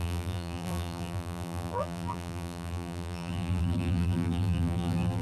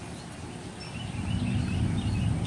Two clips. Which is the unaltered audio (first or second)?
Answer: second